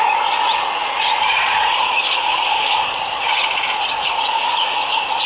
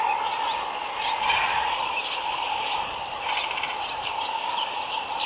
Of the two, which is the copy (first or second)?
first